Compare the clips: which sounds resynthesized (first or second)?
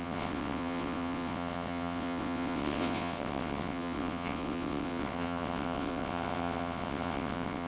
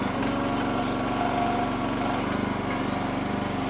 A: first